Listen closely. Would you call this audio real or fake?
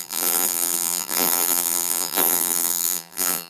fake